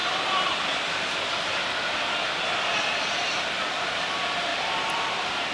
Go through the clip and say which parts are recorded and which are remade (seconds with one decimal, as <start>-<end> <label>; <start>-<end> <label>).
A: 0.0-4.5 recorded; 4.5-5.5 remade